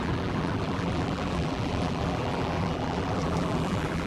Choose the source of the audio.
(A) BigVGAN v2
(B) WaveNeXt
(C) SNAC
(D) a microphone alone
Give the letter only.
A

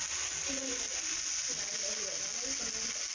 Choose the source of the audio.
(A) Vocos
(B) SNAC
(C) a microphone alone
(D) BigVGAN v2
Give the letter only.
C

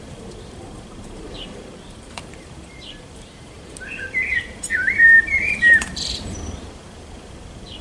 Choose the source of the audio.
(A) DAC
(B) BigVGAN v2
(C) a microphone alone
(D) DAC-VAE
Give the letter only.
B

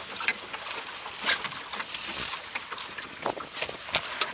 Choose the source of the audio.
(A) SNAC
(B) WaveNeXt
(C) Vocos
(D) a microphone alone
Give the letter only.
D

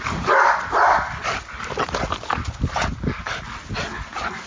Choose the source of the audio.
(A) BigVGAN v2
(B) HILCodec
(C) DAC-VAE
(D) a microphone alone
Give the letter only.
D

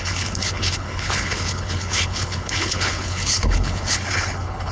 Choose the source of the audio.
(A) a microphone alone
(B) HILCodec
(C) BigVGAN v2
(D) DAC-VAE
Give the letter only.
B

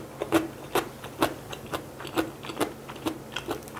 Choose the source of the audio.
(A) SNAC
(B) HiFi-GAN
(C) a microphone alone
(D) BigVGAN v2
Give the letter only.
C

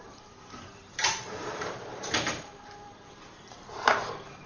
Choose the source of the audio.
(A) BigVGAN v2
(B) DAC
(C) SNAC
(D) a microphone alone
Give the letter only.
A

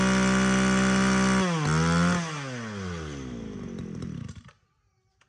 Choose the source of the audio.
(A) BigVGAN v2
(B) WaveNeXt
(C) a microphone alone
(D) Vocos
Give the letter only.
C